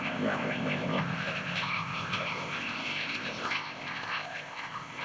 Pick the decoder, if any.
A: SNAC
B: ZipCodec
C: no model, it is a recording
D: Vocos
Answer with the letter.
B